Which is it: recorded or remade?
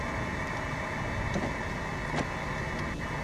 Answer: recorded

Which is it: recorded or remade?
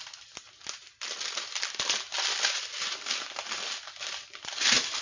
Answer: recorded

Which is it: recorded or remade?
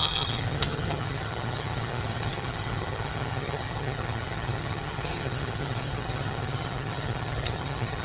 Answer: remade